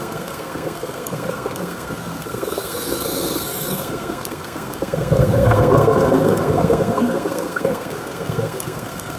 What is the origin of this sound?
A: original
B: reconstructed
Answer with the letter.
B